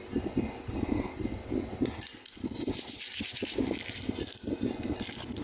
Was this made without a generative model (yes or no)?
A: yes